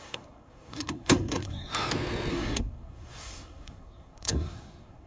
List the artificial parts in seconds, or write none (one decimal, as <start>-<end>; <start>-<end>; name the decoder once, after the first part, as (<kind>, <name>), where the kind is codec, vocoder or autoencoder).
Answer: 0.0-1.7 (codec, SNAC); 2.3-5.1